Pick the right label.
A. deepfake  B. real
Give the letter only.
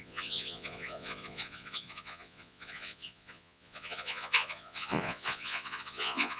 A